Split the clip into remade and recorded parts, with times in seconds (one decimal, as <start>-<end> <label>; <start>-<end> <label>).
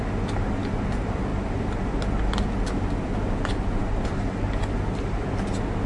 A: 0.0-5.9 recorded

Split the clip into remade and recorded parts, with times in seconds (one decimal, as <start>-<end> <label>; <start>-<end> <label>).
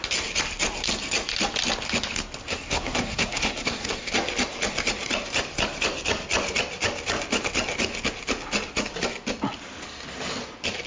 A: 0.0-2.4 recorded; 2.4-4.1 remade; 4.1-10.9 recorded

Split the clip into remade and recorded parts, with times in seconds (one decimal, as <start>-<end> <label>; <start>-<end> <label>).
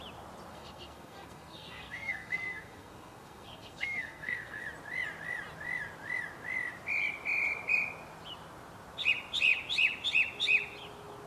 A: 0.0-0.5 recorded; 0.5-4.6 remade; 4.6-11.3 recorded